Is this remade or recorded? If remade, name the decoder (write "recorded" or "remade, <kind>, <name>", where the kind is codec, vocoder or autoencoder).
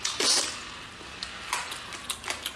recorded